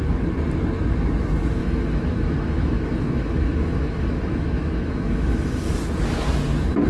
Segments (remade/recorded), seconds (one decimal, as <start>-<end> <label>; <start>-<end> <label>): 0.0-1.6 recorded; 1.6-5.7 remade; 5.7-6.9 recorded